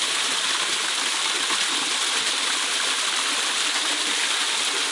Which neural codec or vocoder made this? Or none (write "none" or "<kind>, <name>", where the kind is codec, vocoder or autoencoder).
none